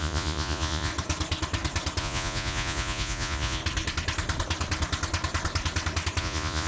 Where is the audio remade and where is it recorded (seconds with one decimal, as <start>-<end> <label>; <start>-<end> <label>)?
0.0-0.9 remade; 0.9-2.0 recorded; 2.0-3.6 remade; 3.6-6.2 recorded; 6.2-6.7 remade